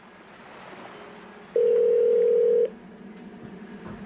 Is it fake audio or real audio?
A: real